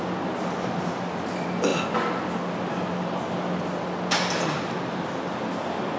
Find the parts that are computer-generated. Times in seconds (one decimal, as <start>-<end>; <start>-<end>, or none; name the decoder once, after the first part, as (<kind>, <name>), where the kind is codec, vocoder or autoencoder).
none